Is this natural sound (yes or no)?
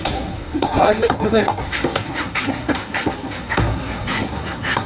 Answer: no